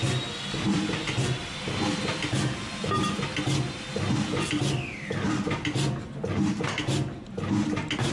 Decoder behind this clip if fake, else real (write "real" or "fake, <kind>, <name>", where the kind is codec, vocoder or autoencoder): real